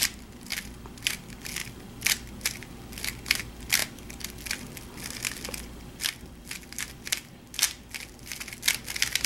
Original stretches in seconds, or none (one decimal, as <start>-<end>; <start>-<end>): 0.0-9.3